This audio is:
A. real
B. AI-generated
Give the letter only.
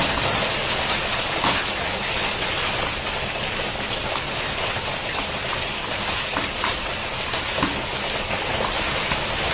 A